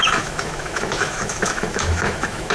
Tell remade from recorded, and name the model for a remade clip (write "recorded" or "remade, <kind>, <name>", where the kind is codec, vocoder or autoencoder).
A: remade, autoencoder, DAC-VAE